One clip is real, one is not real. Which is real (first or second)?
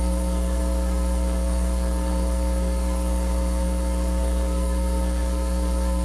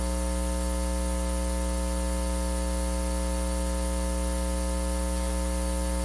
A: second